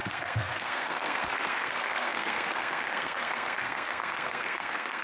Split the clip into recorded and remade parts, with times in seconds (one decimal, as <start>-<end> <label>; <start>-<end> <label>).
0.0-5.0 remade